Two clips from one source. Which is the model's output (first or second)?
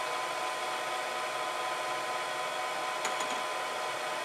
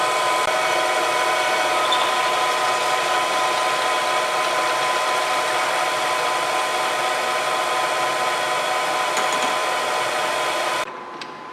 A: second